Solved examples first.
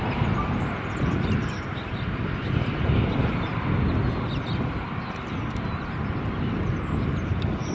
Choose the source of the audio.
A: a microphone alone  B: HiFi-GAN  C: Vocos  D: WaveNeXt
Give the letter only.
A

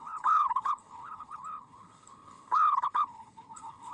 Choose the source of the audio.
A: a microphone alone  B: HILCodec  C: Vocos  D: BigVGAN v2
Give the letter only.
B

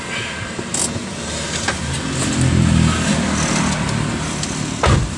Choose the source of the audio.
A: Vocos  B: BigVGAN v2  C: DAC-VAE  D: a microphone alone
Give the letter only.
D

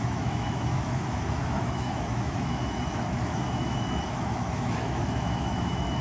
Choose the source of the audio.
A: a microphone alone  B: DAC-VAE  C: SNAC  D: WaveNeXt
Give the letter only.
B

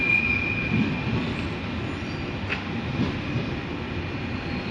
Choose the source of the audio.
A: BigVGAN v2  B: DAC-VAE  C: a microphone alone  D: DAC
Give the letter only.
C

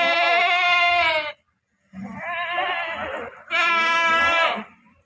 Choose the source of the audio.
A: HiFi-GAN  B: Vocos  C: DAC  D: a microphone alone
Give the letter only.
D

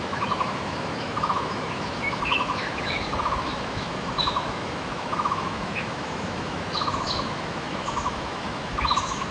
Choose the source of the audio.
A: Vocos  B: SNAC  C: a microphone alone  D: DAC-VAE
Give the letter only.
D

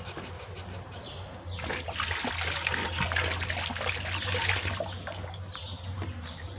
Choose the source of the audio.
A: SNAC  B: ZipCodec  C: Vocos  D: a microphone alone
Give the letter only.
D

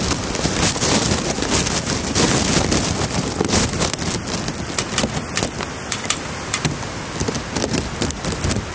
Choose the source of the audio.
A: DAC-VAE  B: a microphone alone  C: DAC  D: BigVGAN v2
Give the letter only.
B